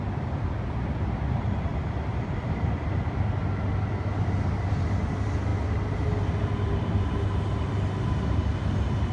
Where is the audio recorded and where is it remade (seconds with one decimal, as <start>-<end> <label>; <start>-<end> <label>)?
0.0-1.7 recorded; 1.7-2.3 remade; 2.3-9.1 recorded